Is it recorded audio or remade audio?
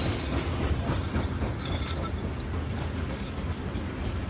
recorded